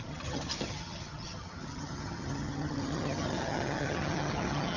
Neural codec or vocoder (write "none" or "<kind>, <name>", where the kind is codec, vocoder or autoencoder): vocoder, HiFi-GAN